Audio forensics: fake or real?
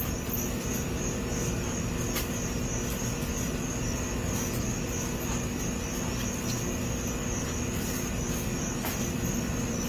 real